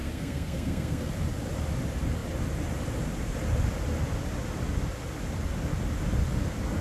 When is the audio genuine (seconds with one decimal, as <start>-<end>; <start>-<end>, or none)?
1.1-6.8